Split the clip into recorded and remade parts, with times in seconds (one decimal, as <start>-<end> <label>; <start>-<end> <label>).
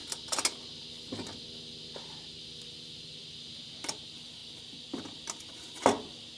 0.0-6.4 recorded